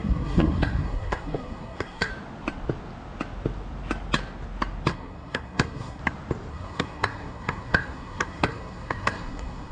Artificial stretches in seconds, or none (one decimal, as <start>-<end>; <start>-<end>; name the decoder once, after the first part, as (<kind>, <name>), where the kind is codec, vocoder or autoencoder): 0.0-2.1 (codec, SNAC); 4.9-6.0; 6.5-9.7